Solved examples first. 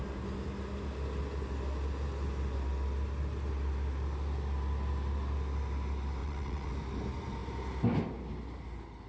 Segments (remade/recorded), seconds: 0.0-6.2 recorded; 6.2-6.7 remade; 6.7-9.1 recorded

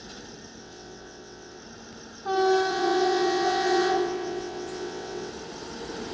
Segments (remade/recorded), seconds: 0.0-0.6 recorded; 0.6-1.6 remade; 1.6-2.7 recorded; 2.7-5.3 remade; 5.3-6.1 recorded

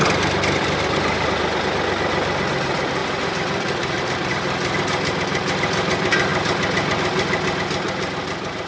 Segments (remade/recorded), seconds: 0.0-8.7 recorded

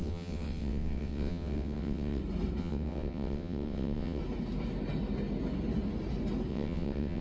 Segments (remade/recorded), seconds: 0.0-2.2 remade; 2.2-2.6 recorded; 2.6-4.2 remade; 4.2-6.5 recorded; 6.5-7.2 remade